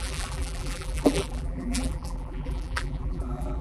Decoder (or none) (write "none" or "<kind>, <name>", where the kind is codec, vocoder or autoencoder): vocoder, BigVGAN v2